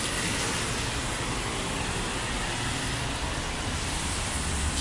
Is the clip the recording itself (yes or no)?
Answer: yes